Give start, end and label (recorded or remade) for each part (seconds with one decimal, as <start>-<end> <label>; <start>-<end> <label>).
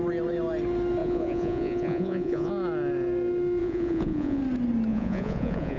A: 0.0-1.0 recorded; 1.0-2.5 remade; 2.5-3.6 recorded; 3.6-4.4 remade; 4.4-4.9 recorded; 4.9-5.8 remade